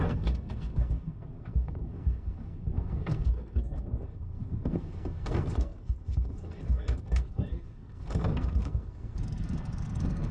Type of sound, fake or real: fake